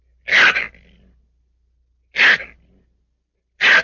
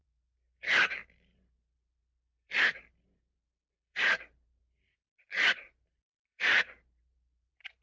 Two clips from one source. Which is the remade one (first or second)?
second